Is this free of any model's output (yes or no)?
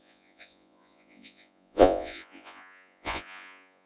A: no